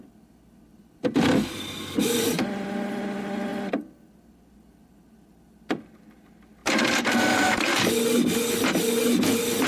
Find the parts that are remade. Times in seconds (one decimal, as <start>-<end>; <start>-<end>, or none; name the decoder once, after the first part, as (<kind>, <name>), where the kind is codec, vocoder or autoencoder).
0.7-2.8 (vocoder, BigVGAN v2); 6.6-7.9